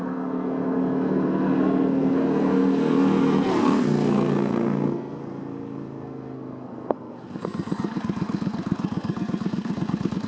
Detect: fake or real fake